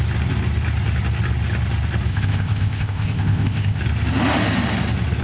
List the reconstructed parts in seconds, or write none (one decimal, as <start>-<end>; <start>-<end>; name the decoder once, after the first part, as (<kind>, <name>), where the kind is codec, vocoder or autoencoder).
2.1-3.8 (codec, ZipCodec)